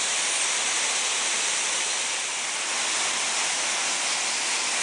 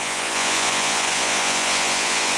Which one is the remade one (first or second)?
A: second